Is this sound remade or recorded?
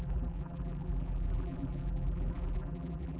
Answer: remade